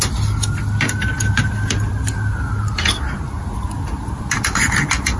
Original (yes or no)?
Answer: yes